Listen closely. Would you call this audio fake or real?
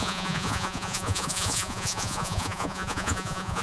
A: fake